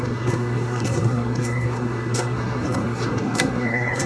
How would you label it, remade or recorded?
remade